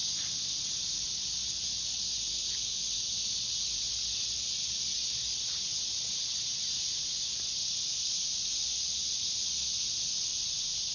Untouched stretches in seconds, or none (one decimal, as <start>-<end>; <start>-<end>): 0.0-10.9